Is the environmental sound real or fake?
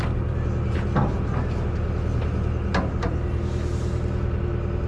real